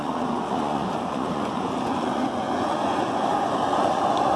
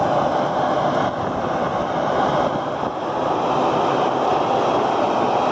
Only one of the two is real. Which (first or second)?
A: second